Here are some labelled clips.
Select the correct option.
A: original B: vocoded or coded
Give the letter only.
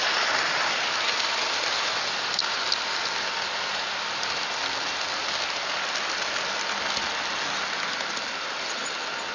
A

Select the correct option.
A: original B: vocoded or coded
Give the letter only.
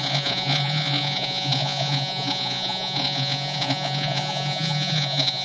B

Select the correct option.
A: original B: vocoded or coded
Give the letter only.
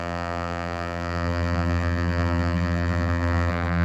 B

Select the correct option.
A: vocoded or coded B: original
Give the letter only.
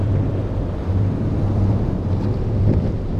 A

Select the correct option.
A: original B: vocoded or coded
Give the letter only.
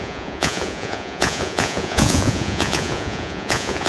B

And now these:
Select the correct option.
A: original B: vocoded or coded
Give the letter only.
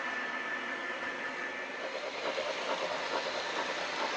A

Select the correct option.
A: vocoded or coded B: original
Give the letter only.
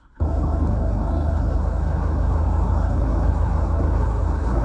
A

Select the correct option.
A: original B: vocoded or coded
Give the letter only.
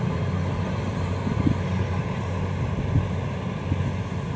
A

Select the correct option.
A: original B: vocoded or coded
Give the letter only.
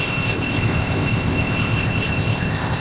B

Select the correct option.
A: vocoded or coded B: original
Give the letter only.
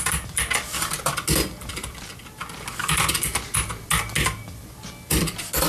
B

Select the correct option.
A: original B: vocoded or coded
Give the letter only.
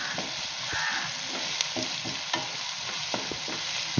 A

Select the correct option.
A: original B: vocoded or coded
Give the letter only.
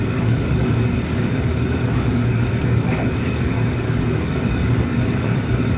B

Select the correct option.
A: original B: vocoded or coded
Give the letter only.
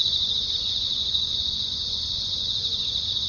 B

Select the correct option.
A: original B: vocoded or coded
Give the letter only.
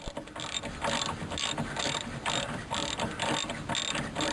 A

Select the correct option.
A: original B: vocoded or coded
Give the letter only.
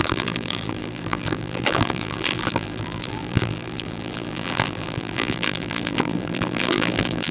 B